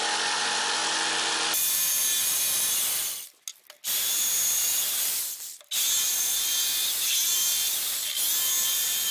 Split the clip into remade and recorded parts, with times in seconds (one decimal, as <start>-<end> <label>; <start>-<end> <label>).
0.0-9.1 recorded